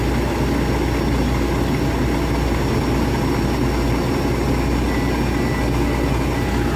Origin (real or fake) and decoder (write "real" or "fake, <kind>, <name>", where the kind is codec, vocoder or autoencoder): real